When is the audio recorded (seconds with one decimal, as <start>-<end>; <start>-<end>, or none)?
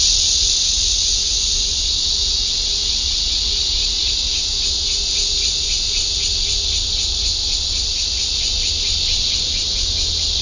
0.0-1.2; 1.9-10.4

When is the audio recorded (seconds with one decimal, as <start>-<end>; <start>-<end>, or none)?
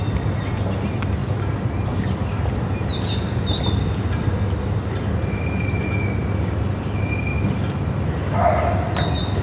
0.0-9.4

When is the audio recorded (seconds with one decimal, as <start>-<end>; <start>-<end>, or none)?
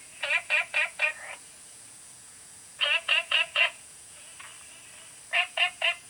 4.3-5.5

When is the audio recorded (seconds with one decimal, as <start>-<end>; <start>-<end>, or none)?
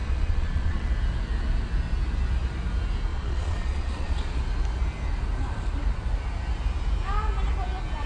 0.9-3.1; 4.4-8.1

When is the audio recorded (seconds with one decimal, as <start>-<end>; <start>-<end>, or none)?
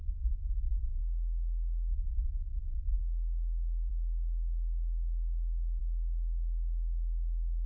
1.0-1.9; 3.0-7.7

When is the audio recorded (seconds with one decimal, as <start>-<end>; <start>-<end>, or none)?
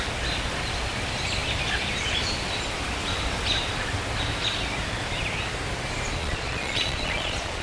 0.0-6.2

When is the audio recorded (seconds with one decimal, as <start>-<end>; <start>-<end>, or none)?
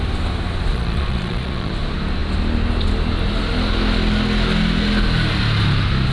0.0-0.7; 1.7-6.1